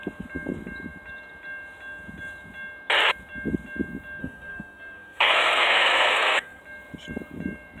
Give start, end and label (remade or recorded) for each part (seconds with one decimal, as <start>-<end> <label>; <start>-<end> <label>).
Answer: 0.0-4.2 recorded; 4.2-6.6 remade; 6.6-7.8 recorded